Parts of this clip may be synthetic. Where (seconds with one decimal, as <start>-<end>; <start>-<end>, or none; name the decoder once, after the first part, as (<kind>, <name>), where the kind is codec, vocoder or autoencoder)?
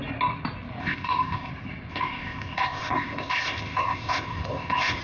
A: 0.8-1.5 (codec, ZipCodec); 1.9-5.0